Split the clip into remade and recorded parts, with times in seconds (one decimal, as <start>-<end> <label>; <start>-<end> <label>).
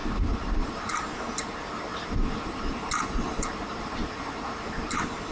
0.0-0.6 recorded; 0.6-5.3 remade